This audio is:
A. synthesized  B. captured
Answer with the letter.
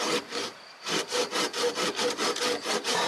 A